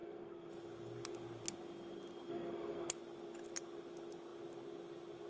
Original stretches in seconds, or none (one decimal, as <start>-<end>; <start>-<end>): 0.5-2.3; 2.9-5.3